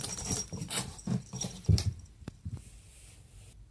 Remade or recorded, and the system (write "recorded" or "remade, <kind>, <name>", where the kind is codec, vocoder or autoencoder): remade, vocoder, BigVGAN v2